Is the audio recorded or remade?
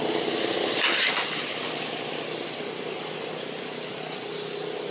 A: recorded